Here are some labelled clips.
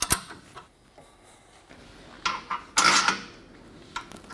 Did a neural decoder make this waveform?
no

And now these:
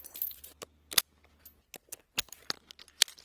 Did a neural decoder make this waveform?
no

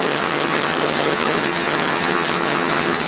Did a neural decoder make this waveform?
yes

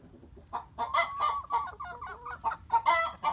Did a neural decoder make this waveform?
no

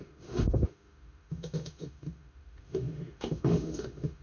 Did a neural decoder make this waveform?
yes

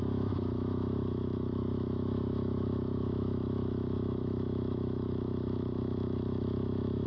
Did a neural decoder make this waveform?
yes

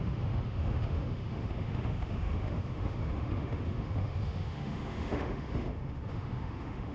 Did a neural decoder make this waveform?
yes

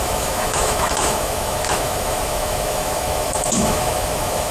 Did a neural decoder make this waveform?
yes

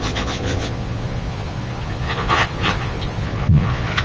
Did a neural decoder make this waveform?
yes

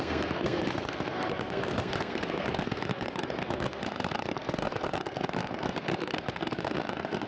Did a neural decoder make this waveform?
yes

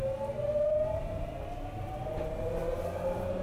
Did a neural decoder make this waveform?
no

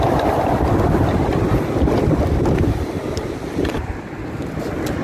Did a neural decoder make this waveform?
no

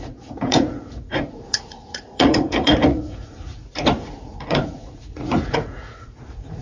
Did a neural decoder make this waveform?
yes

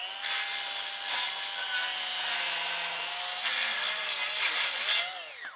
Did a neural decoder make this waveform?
no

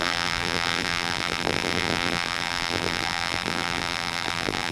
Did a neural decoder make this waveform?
yes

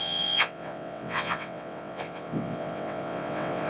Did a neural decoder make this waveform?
yes